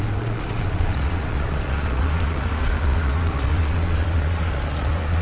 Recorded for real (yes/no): no